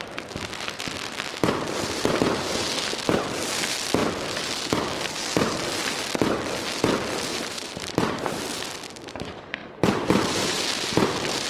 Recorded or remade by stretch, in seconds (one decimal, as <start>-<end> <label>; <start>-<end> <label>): 0.0-7.3 recorded; 7.3-8.4 remade; 8.4-9.6 recorded; 9.6-10.6 remade; 10.6-11.5 recorded